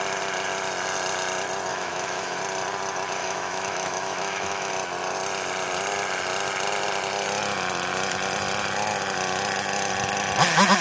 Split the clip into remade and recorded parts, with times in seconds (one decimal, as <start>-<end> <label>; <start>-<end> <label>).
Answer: 0.0-1.7 recorded; 1.7-2.4 remade; 2.4-3.2 recorded; 3.2-4.7 remade; 4.7-10.8 recorded